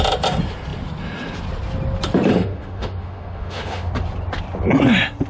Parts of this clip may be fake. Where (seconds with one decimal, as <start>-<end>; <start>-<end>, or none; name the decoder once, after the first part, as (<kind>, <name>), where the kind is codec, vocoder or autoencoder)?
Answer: 2.3-3.9 (autoencoder, DAC-VAE)